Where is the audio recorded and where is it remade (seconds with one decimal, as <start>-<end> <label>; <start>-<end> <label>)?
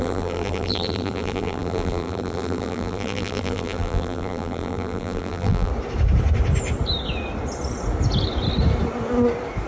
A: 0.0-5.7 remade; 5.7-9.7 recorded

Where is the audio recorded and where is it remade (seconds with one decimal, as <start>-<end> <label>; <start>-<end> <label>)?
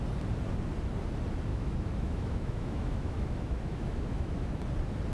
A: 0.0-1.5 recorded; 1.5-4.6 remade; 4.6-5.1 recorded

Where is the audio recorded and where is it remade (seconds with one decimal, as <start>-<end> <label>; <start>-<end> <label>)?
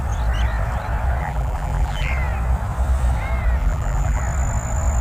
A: 0.0-1.2 recorded; 1.2-2.1 remade; 2.1-3.6 recorded; 3.6-4.2 remade; 4.2-5.0 recorded